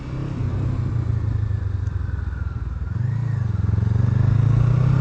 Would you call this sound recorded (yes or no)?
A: yes